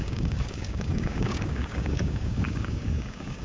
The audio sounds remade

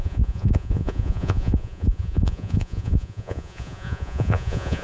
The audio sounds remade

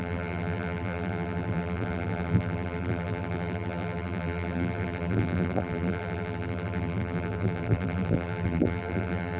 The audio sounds remade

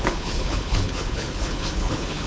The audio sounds remade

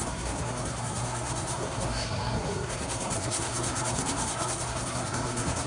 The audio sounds remade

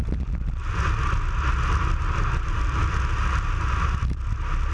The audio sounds recorded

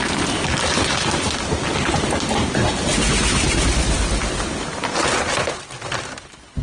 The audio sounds recorded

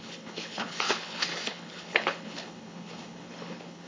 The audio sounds remade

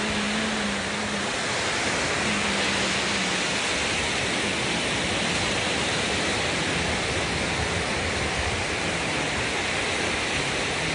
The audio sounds recorded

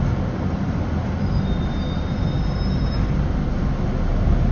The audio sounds recorded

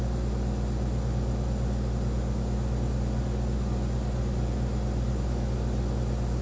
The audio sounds recorded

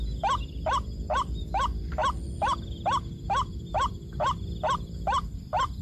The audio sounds recorded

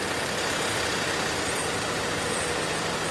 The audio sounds recorded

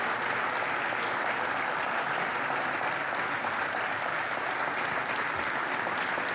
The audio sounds recorded